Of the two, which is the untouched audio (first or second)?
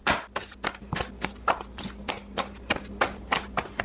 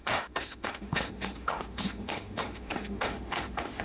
first